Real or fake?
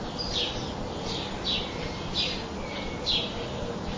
real